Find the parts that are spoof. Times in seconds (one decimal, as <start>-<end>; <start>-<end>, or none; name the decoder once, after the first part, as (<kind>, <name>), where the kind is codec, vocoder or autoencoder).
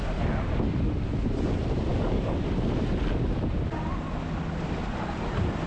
1.9-2.4 (codec, DAC)